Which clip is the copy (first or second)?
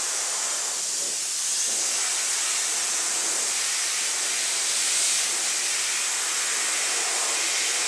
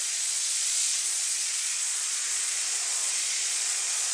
second